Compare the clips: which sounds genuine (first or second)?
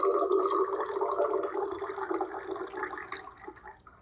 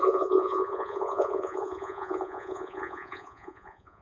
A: first